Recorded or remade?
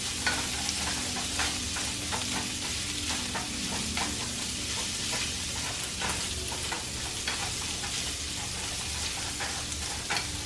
recorded